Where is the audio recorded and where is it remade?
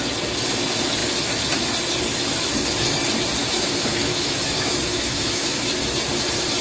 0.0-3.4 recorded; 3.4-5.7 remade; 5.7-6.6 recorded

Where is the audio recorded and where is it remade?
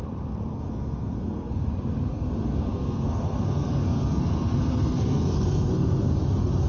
0.0-0.5 recorded; 0.5-1.7 remade; 1.7-2.1 recorded; 2.1-6.1 remade; 6.1-6.7 recorded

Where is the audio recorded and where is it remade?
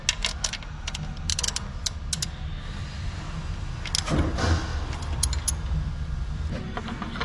0.0-7.2 recorded